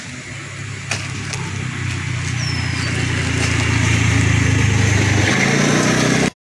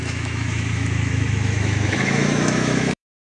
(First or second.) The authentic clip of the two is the first